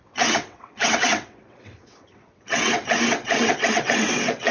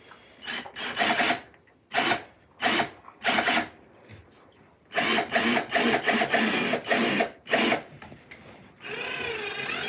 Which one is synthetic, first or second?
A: first